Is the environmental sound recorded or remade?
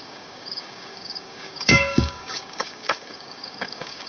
remade